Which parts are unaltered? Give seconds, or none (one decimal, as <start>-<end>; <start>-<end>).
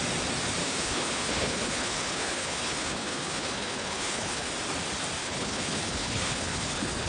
0.0-0.6; 4.5-5.2